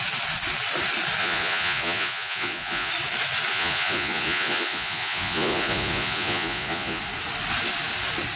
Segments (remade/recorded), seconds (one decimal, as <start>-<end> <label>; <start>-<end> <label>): 0.0-1.2 recorded; 1.2-2.9 remade; 2.9-3.5 recorded; 3.5-7.0 remade; 7.0-8.4 recorded